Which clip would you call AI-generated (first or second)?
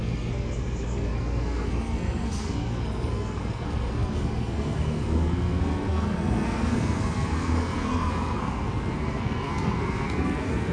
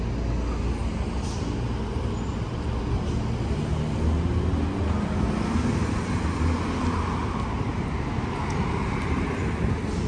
first